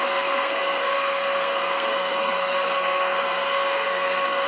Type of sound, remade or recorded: remade